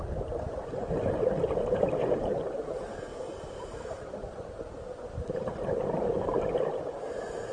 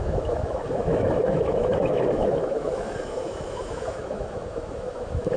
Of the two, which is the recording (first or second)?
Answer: first